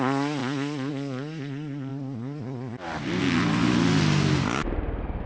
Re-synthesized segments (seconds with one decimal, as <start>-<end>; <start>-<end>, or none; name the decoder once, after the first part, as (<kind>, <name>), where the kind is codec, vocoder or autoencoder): 0.4-0.9 (vocoder, BigVGAN v2); 1.9-3.2